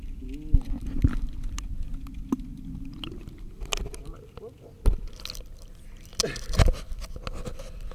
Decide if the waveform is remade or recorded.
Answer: recorded